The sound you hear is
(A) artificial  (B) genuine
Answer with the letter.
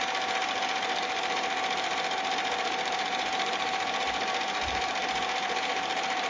A